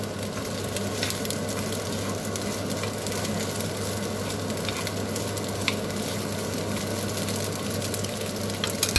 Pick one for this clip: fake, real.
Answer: real